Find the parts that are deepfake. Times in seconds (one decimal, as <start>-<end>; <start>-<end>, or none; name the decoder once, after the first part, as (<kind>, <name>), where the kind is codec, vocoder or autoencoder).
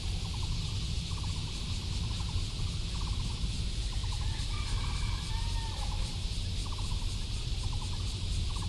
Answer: 4.0-5.3 (vocoder, BigVGAN v2)